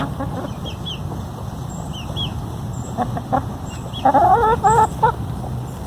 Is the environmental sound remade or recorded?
recorded